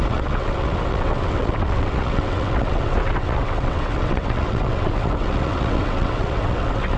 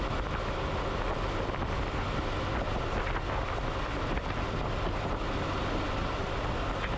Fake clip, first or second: first